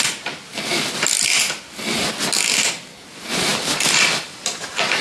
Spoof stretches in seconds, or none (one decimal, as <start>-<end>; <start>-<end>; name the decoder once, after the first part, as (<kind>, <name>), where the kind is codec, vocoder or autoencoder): 3.5-5.0 (vocoder, BigVGAN v2)